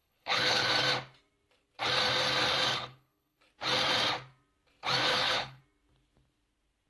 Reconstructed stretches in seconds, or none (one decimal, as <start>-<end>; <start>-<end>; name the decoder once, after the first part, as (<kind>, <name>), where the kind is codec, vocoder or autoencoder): 0.0-0.7 (codec, HILCodec); 2.7-3.4; 5.0-5.6